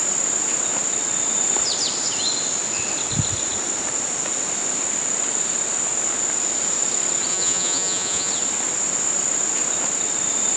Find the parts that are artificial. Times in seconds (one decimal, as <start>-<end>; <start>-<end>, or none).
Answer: 7.3-8.3